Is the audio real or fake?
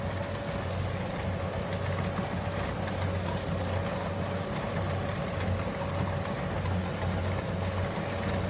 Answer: real